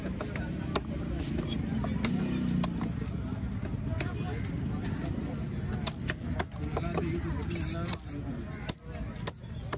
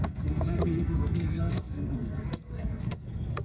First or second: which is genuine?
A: first